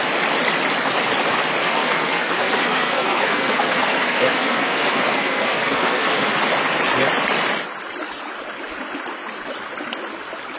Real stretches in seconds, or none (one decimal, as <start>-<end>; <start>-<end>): 0.0-1.6; 6.3-10.6